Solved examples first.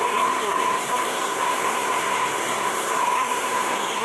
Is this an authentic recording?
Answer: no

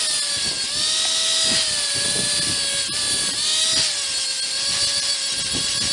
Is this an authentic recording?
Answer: yes